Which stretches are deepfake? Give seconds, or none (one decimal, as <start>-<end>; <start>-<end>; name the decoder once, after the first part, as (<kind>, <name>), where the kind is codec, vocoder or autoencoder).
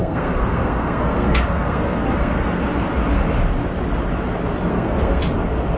0.0-2.6 (codec, SNAC); 4.7-5.2